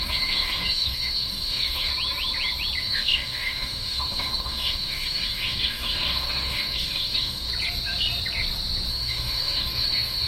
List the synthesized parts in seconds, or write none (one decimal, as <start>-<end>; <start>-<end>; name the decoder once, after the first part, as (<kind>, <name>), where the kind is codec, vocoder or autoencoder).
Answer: 0.0-1.9 (codec, DAC); 2.8-7.5; 8.9-10.3